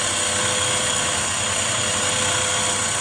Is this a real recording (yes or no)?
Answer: yes